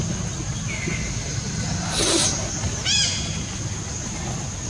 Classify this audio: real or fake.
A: real